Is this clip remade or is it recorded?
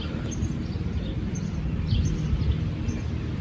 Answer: recorded